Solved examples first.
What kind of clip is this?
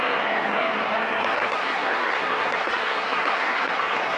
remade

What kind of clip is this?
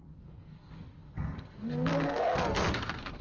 remade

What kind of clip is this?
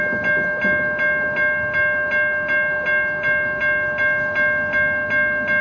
recorded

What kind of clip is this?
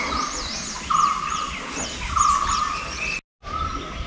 recorded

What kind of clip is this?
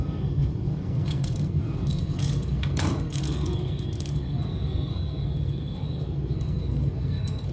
remade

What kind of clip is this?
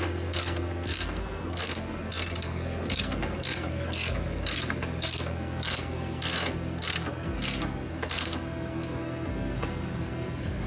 remade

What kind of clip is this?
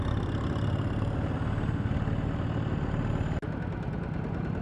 recorded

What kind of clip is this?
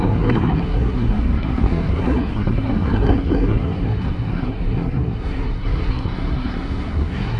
remade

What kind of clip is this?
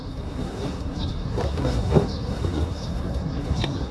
remade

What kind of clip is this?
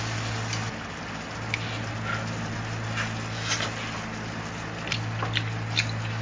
recorded